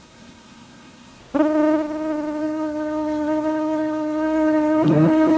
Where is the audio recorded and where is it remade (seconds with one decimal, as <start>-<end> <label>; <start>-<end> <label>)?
0.0-1.2 remade; 1.2-2.4 recorded; 2.4-5.4 remade